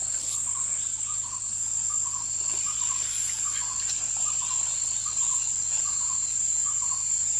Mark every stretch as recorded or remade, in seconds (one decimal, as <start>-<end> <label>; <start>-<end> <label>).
0.0-5.3 recorded; 5.3-5.8 remade; 5.8-7.4 recorded